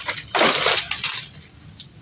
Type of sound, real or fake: real